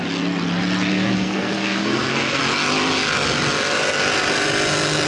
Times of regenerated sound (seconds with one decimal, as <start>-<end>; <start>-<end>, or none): 0.9-2.4